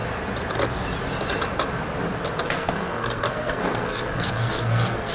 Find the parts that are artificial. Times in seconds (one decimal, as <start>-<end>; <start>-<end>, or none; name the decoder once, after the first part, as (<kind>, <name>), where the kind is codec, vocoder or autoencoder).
2.4-5.1 (codec, SNAC)